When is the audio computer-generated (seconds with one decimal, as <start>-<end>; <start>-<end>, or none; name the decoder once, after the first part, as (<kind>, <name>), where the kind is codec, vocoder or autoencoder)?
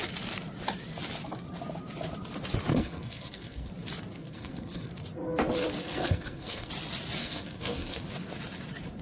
2.7-3.7 (codec, SNAC); 4.2-4.9; 5.8-6.7; 7.2-8.0